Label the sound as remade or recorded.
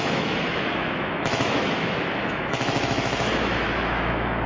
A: remade